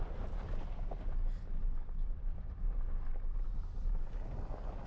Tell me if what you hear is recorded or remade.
recorded